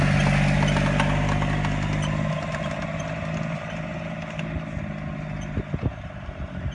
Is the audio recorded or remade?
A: recorded